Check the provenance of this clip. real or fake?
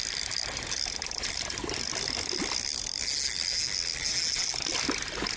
real